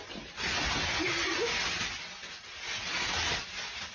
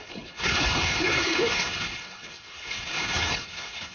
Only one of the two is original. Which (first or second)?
first